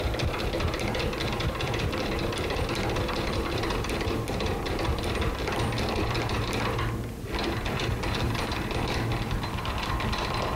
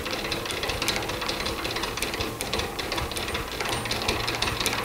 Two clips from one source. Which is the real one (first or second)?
second